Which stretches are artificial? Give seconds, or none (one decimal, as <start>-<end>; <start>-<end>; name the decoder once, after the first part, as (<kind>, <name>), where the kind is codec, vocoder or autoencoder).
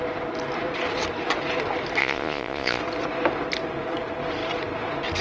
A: 2.0-2.8 (vocoder, Vocos)